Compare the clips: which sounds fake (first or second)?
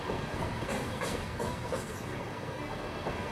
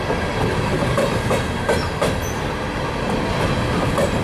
first